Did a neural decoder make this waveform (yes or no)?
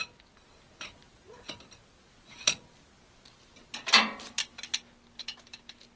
no